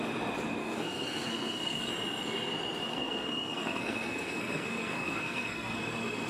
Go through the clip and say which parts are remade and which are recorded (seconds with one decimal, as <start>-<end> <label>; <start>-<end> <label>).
0.0-0.6 recorded; 0.6-1.9 remade; 1.9-2.9 recorded; 2.9-5.8 remade; 5.8-6.3 recorded